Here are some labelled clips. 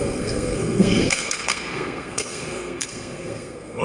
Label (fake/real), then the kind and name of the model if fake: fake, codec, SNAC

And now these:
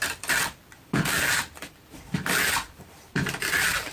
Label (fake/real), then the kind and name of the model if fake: fake, vocoder, BigVGAN v2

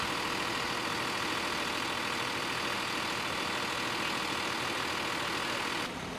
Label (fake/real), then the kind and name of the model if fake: real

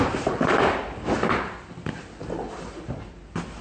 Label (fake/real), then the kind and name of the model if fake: real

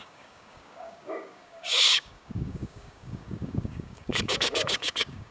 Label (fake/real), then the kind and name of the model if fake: fake, codec, DAC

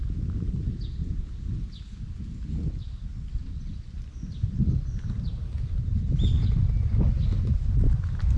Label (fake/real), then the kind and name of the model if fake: real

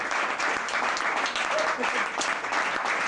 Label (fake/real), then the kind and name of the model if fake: real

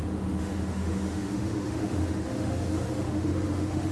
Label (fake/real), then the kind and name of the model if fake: fake, autoencoder, DAC-VAE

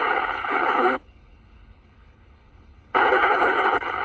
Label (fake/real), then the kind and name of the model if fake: fake, codec, HILCodec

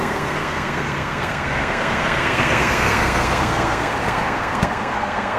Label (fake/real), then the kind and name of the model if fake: fake, codec, SNAC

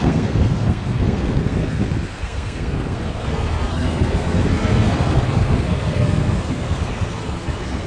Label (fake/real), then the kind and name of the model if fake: fake, codec, SNAC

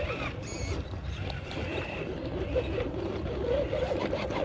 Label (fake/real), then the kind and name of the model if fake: real